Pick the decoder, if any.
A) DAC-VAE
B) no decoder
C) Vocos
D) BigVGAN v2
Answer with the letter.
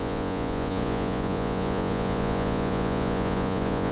C